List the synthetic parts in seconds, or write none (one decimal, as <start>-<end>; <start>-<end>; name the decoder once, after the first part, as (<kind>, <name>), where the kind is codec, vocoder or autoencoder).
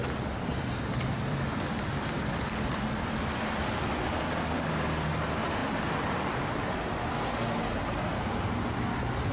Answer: 0.0-5.1 (vocoder, BigVGAN v2); 5.6-6.2